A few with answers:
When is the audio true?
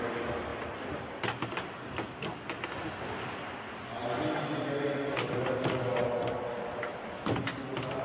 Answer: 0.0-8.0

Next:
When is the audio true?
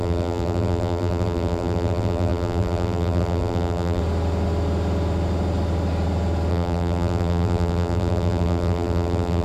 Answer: 4.0-6.5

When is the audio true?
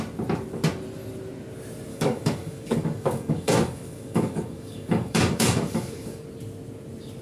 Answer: 0.0-1.9; 6.2-7.2